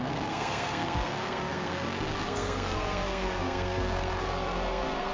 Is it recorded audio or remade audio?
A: remade